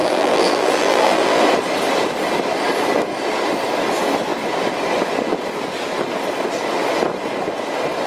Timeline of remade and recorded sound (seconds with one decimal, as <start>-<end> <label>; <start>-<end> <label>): 0.0-1.4 remade; 1.4-8.1 recorded